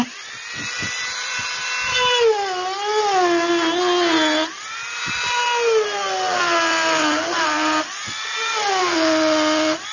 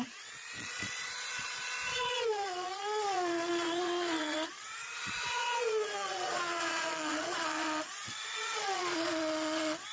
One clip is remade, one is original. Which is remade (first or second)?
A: second